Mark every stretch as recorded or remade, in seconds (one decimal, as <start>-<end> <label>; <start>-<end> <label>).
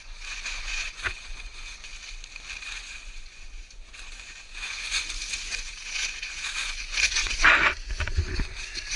0.0-1.9 remade; 1.9-2.6 recorded; 2.6-9.0 remade